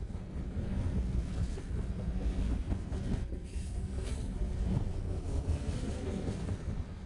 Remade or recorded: remade